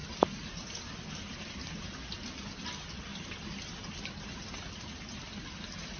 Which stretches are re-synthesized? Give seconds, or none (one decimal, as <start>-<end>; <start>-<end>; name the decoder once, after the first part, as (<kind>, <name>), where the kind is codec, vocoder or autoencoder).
none